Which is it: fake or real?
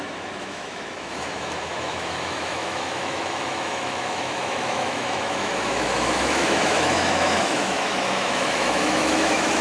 fake